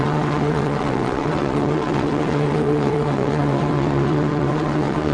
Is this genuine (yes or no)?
no